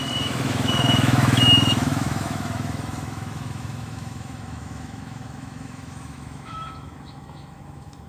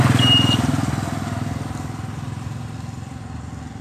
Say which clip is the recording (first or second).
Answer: second